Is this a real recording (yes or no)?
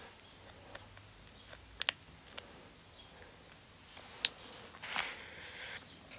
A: yes